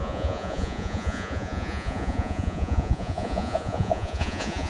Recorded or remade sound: remade